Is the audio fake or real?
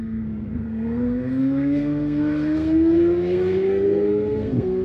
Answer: fake